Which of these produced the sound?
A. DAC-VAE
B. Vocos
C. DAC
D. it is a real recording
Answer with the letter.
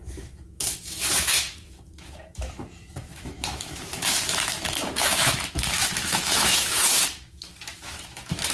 A